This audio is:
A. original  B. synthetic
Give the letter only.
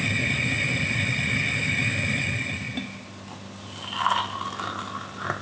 A